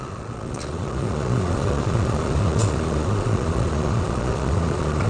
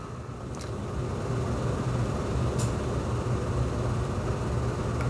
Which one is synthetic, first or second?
first